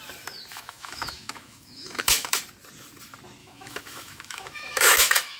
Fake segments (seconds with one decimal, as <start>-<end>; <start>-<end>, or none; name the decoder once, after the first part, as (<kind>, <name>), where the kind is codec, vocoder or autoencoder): 0.5-2.4 (autoencoder, DAC-VAE); 3.4-5.4